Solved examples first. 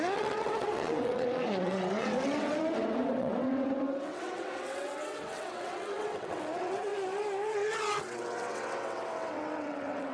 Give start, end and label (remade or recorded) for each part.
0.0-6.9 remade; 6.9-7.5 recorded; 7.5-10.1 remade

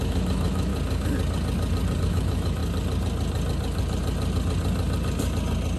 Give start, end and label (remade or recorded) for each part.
0.0-0.7 remade; 0.7-2.0 recorded; 2.0-2.6 remade; 2.6-5.8 recorded

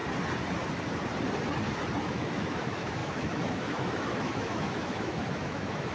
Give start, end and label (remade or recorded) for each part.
0.0-2.0 recorded; 2.0-5.9 remade

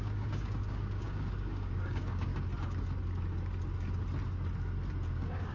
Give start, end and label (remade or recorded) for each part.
0.0-2.3 remade; 2.3-5.1 recorded; 5.1-5.5 remade

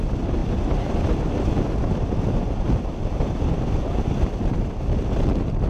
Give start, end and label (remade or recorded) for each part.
0.0-5.7 recorded

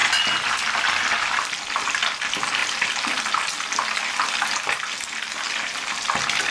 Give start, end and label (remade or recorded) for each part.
0.0-6.5 recorded

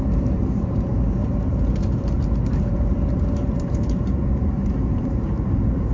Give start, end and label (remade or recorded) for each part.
0.0-0.9 remade; 0.9-1.5 recorded; 1.5-5.9 remade